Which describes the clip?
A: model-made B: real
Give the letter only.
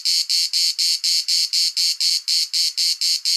B